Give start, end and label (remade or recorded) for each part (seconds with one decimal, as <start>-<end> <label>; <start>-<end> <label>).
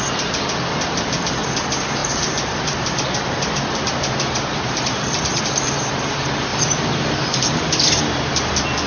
0.0-2.0 recorded; 2.0-5.4 remade; 5.4-6.5 recorded; 6.5-7.5 remade; 7.5-8.9 recorded